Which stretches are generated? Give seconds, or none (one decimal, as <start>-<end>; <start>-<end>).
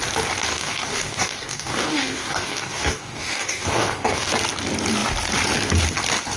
0.5-4.3